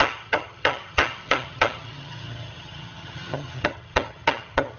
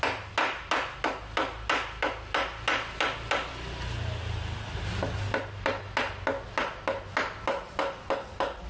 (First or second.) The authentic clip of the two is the second